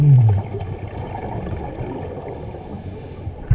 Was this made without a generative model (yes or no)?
yes